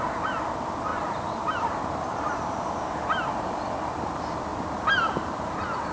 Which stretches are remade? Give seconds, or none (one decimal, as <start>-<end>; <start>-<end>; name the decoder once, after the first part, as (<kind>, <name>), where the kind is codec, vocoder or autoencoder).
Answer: 0.9-3.7 (vocoder, BigVGAN v2); 4.5-5.5

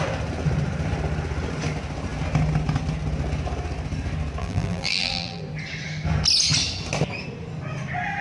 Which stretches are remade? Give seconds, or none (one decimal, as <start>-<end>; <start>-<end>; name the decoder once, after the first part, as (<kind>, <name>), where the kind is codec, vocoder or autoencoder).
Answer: 4.4-5.4 (vocoder, BigVGAN v2)

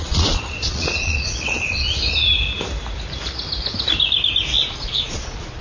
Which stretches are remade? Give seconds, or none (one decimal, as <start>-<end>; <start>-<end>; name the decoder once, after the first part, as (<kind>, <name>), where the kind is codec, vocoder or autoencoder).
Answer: 0.0-1.9 (vocoder, Vocos); 4.7-5.6

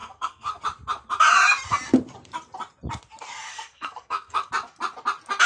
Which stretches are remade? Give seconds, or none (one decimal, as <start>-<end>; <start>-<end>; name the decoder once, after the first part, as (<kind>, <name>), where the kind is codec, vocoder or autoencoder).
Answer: 0.0-0.6 (codec, SNAC); 3.5-4.5

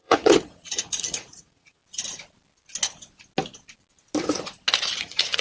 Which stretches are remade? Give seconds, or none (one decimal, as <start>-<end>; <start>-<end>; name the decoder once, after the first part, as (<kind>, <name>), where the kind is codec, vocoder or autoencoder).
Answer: 0.0-1.8 (vocoder, Vocos); 5.0-5.4

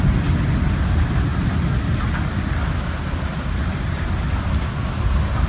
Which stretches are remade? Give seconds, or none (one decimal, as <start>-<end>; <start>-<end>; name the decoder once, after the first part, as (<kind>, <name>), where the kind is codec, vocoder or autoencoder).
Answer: none

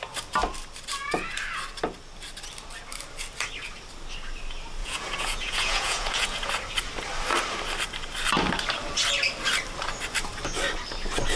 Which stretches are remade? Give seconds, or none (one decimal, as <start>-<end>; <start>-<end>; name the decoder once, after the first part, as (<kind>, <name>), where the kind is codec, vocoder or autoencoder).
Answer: 4.8-6.5 (vocoder, Vocos)

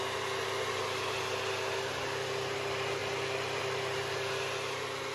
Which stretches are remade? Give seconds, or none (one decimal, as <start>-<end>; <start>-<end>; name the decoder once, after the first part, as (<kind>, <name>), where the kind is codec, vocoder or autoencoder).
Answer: none